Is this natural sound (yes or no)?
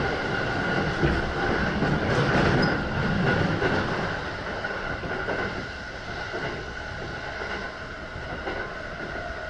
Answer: yes